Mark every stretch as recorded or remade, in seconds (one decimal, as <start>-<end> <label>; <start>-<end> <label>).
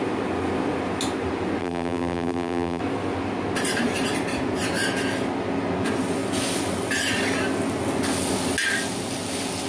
0.0-1.6 recorded; 1.6-2.8 remade; 2.8-9.7 recorded